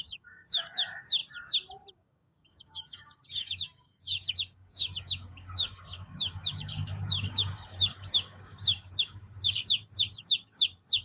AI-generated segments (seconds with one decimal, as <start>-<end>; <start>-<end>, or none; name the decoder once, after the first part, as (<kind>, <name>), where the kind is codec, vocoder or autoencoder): 0.0-1.2 (codec, DAC); 1.9-11.0